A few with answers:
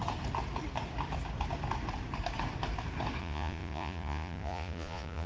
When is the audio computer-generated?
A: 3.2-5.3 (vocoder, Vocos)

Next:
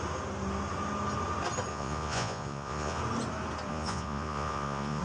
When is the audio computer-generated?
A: 1.7-3.0 (vocoder, Vocos); 3.7-5.0